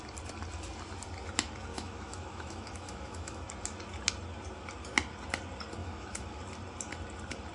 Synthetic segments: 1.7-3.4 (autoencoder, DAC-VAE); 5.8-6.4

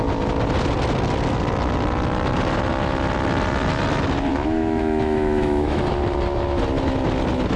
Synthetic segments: 4.3-5.8 (autoencoder, DAC-VAE)

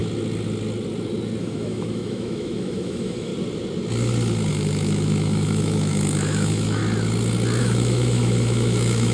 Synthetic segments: 1.4-3.3 (autoencoder, DAC-VAE); 4.5-6.8; 7.6-9.1

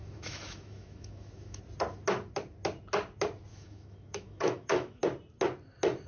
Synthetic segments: 0.0-1.6 (autoencoder, DAC-VAE); 3.5-5.0